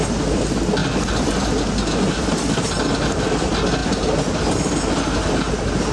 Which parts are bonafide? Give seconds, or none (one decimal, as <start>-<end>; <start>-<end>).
0.0-5.9